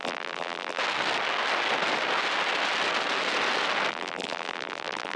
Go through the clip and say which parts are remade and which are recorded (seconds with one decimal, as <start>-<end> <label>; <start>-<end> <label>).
0.0-0.8 remade; 0.8-3.9 recorded; 3.9-5.2 remade